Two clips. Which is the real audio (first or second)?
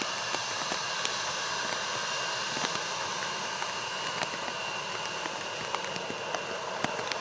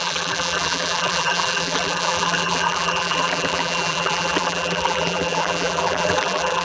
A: first